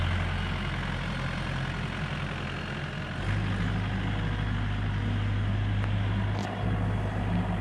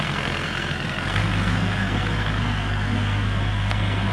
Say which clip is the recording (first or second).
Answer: first